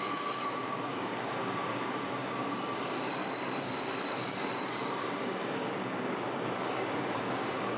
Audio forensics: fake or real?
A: fake